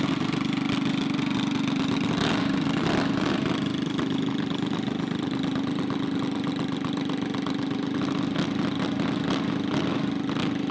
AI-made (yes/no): no